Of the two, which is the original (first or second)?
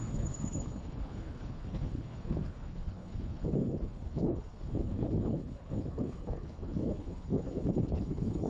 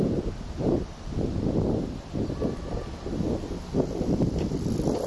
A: second